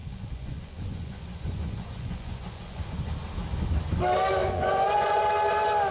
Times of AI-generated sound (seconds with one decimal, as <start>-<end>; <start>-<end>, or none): 0.0-2.9; 4.4-5.2